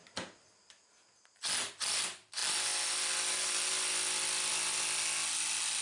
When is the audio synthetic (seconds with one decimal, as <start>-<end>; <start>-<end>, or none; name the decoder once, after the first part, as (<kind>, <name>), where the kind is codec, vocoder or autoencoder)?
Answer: none